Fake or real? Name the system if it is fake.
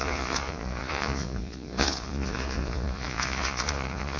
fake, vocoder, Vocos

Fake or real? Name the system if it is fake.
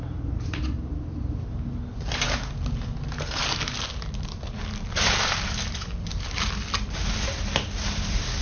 real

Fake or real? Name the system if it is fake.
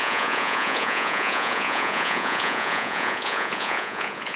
fake, vocoder, Vocos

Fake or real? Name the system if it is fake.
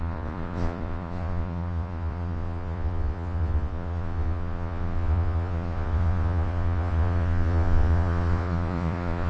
fake, vocoder, Vocos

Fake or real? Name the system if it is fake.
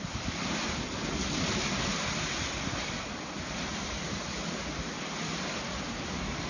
real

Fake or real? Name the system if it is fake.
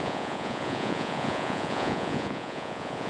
fake, vocoder, Vocos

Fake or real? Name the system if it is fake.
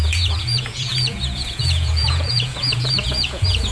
fake, vocoder, Vocos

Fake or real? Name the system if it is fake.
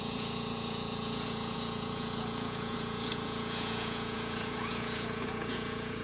fake, vocoder, Vocos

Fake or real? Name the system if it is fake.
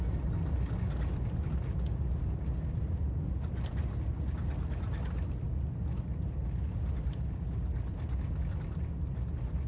real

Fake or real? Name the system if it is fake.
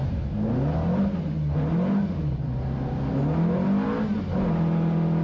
real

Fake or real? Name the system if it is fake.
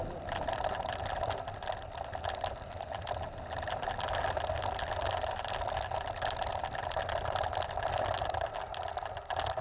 real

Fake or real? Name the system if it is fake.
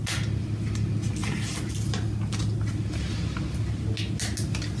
real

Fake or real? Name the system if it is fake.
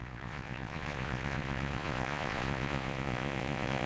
fake, vocoder, Vocos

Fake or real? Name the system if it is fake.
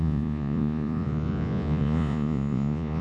fake, vocoder, Vocos